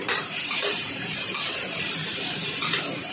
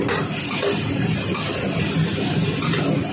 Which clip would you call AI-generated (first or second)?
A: first